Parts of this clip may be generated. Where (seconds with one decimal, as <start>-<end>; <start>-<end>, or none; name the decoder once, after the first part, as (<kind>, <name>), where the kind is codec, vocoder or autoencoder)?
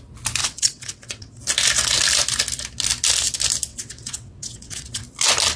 0.4-1.4 (vocoder, WaveNeXt); 3.7-5.0